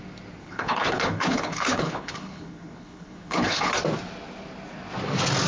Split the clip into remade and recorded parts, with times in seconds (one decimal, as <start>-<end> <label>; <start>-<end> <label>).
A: 0.0-0.4 recorded; 0.4-3.7 remade; 3.7-5.5 recorded